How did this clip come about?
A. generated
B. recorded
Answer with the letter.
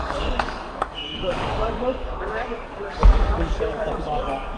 A